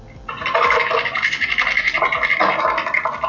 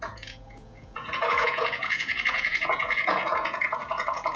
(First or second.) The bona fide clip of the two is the first